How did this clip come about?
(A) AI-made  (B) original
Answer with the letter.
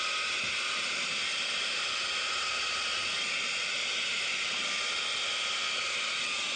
B